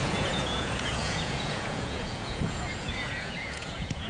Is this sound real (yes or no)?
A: no